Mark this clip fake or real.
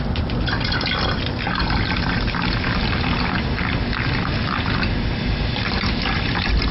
real